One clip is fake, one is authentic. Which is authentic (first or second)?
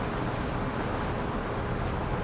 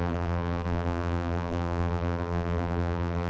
first